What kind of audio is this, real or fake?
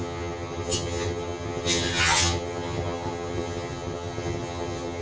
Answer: fake